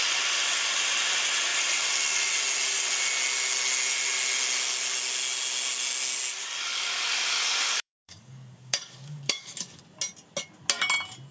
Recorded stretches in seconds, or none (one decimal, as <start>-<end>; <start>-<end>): 0.0-6.7; 9.8-11.3